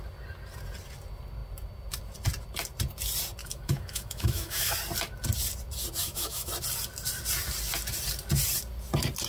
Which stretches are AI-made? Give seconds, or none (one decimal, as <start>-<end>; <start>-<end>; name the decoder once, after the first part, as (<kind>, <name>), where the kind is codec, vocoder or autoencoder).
3.4-4.7 (autoencoder, DAC-VAE); 6.0-6.5